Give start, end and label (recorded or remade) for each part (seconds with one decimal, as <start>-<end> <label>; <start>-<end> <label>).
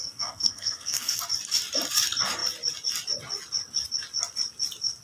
0.0-1.2 remade; 1.2-5.0 recorded